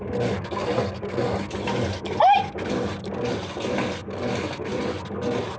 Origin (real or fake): real